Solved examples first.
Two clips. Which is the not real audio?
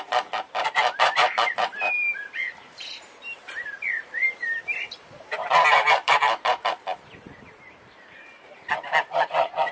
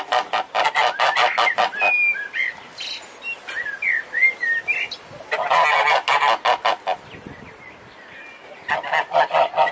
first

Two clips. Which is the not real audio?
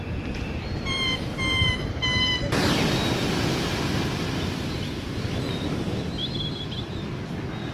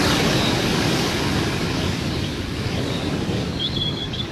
second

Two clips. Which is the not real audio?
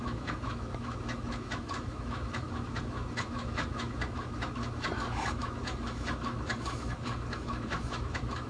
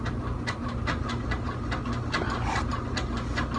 first